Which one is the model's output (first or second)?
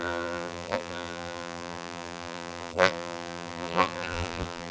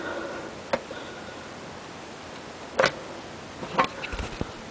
first